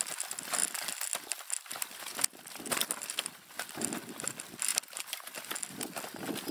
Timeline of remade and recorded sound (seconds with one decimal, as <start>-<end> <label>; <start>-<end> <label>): 0.0-6.5 recorded